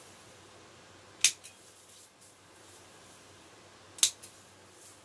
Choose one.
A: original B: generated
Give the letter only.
A